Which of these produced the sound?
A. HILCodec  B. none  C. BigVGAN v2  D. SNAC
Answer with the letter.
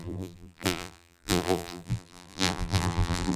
C